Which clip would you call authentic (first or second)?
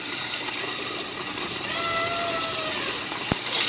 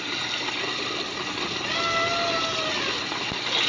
second